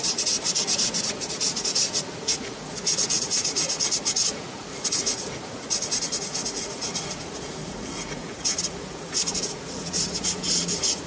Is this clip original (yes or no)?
no